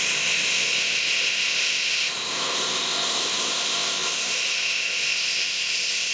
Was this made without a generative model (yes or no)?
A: no